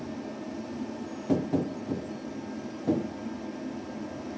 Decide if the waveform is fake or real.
real